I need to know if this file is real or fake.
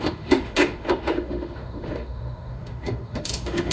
fake